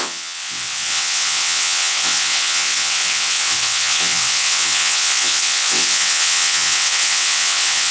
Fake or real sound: fake